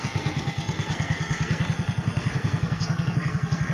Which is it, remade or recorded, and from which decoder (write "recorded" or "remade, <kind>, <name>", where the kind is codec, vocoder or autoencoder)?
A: remade, codec, SNAC